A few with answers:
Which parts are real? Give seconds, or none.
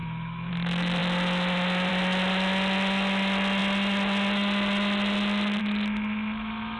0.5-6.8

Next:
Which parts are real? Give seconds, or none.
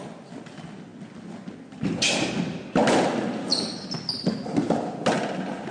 0.0-5.7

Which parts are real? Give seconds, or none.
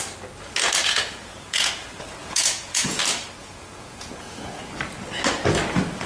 0.0-0.8; 1.7-2.2; 3.0-3.4; 4.6-6.1